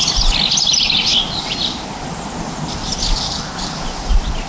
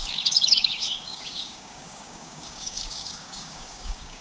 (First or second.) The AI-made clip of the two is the second